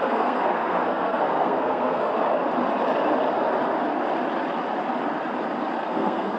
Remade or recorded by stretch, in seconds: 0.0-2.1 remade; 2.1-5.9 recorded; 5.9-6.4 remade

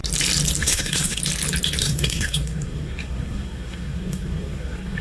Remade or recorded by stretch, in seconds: 0.0-0.6 recorded; 0.6-1.2 remade; 1.2-1.8 recorded; 1.8-5.0 remade

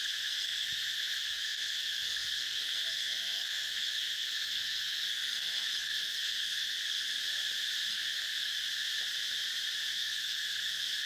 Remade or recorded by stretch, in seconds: 0.0-7.2 remade; 7.2-7.9 recorded; 7.9-8.5 remade; 8.5-9.9 recorded; 9.9-11.1 remade

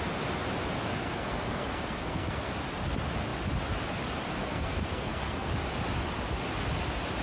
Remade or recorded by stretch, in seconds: 0.0-0.9 recorded; 0.9-2.5 remade; 2.5-4.4 recorded; 4.4-5.5 remade; 5.5-7.2 recorded